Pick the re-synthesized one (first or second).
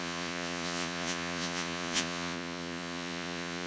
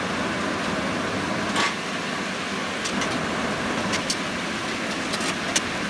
first